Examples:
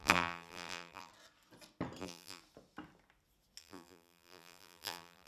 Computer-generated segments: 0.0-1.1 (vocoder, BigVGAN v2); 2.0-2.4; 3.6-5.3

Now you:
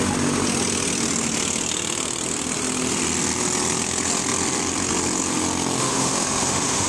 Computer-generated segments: 5.8-6.9 (autoencoder, DAC-VAE)

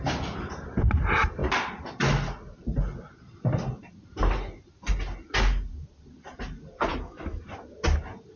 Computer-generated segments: 6.9-7.4 (autoencoder, DAC-VAE)